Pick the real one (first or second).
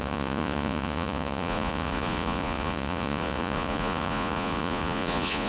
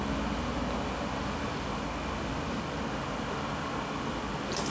second